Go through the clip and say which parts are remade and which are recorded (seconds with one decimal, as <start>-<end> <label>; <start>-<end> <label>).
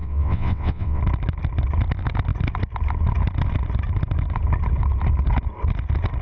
0.0-1.0 remade; 1.0-6.2 recorded